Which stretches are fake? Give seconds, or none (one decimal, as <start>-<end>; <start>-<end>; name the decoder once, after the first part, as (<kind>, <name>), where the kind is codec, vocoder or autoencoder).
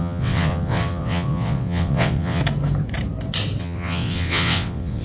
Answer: 0.0-2.4 (vocoder, WaveNeXt); 3.6-5.0